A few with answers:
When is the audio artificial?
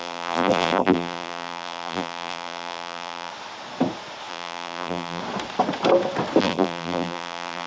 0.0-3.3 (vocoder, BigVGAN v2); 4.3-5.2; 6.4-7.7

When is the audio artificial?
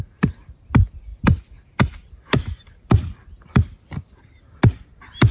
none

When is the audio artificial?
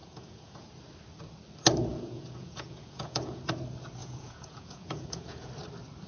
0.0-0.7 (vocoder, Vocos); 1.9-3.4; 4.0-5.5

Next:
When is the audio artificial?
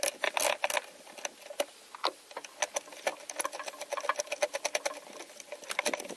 none